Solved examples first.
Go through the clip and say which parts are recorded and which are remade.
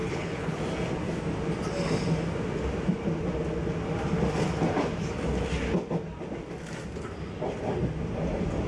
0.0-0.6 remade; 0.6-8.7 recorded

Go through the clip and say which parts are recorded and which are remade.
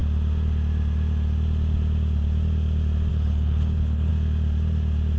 0.0-3.1 recorded; 3.1-4.1 remade; 4.1-5.2 recorded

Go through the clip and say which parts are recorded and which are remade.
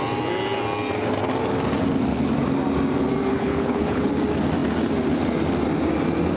0.0-3.3 recorded; 3.3-4.1 remade; 4.1-6.4 recorded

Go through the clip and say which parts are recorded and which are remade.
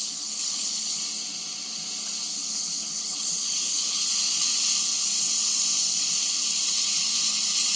0.0-1.0 remade; 1.0-2.3 recorded; 2.3-4.1 remade; 4.1-7.8 recorded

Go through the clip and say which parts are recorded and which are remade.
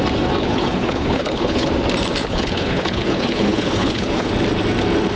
0.0-0.4 recorded; 0.4-1.7 remade; 1.7-2.2 recorded; 2.2-4.3 remade; 4.3-5.2 recorded